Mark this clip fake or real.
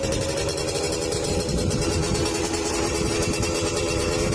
fake